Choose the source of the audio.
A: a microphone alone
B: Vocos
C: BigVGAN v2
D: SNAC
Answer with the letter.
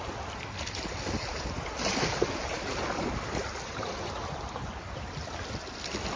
A